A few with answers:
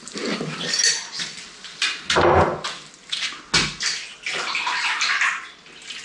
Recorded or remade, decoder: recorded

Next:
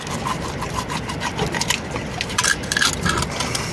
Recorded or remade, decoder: recorded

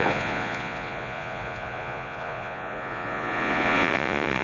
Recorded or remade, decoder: remade, vocoder, Vocos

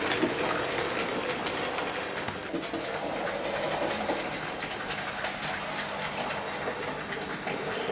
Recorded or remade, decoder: recorded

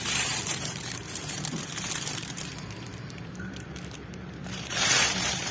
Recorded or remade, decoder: remade, vocoder, BigVGAN v2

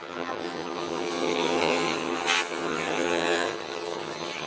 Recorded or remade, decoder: remade, vocoder, HiFi-GAN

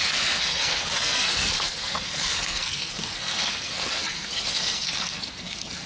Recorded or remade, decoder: remade, codec, SNAC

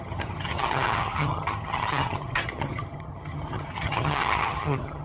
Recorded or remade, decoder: remade, vocoder, HiFi-GAN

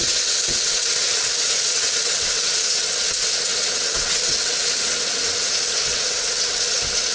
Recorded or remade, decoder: remade, vocoder, WaveNeXt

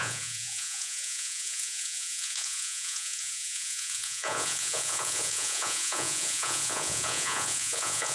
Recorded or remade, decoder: remade, vocoder, Vocos